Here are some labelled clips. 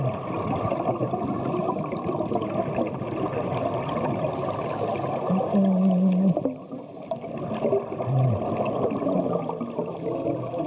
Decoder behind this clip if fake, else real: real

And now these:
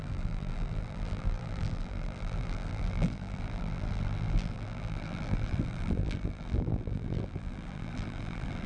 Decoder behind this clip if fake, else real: fake, vocoder, BigVGAN v2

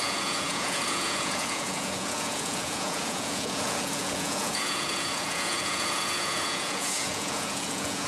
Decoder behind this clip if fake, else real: fake, vocoder, Vocos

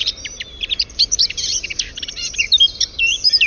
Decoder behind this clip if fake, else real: fake, vocoder, BigVGAN v2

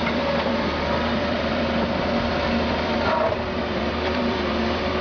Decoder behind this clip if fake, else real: fake, vocoder, BigVGAN v2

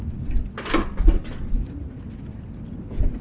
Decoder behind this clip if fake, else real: real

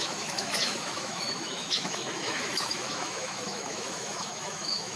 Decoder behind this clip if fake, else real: fake, autoencoder, DAC-VAE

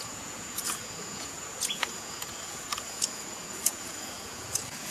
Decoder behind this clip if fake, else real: fake, vocoder, Vocos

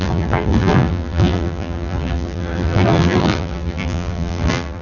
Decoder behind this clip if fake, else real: fake, vocoder, BigVGAN v2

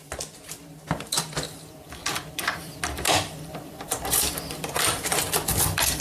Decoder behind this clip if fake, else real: fake, vocoder, BigVGAN v2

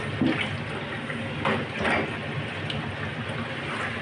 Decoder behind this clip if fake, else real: real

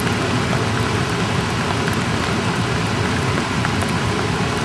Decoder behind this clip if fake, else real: real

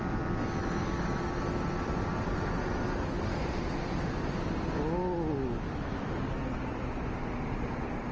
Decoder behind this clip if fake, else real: real